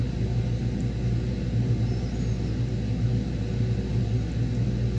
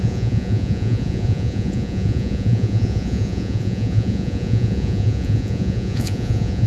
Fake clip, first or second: second